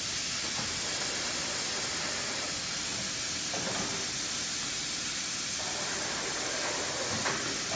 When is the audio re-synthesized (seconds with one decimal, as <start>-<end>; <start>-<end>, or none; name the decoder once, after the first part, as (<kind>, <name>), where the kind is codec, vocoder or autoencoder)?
none